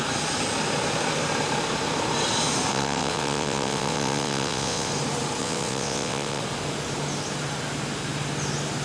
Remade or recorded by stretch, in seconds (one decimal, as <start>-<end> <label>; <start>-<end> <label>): 0.0-2.7 recorded; 2.7-4.9 remade; 4.9-5.4 recorded; 5.4-6.4 remade; 6.4-8.8 recorded